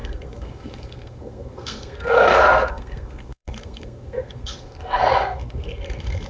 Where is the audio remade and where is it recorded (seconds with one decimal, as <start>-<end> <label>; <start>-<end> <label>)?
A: 0.0-6.3 remade